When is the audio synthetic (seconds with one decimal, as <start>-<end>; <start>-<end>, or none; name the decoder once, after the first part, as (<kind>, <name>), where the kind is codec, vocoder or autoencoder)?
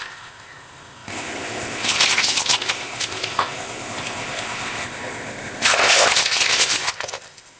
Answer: 0.0-7.6 (codec, ZipCodec)